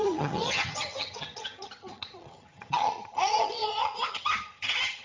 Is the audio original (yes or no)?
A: no